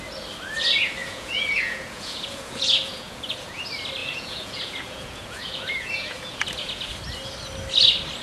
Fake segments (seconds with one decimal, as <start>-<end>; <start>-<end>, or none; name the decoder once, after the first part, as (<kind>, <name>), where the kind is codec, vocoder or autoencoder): 1.0-3.6 (vocoder, Vocos); 4.0-6.9